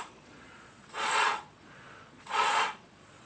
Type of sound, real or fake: fake